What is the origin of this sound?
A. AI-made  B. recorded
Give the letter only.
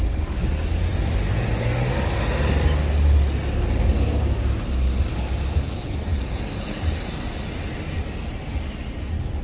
B